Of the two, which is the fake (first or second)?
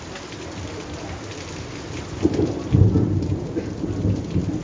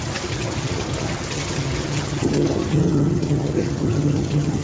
second